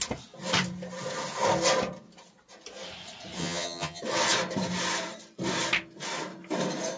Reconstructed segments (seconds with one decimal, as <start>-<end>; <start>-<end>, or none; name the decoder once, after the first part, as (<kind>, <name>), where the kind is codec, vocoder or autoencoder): 3.4-4.0 (vocoder, HiFi-GAN)